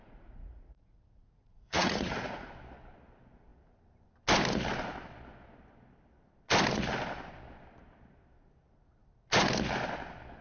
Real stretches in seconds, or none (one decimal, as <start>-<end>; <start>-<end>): 2.5-10.4